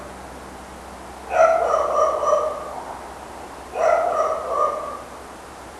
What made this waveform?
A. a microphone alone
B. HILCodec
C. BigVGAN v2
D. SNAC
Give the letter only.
A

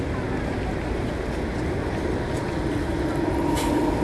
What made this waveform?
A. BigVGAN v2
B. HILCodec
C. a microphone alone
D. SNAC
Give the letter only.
C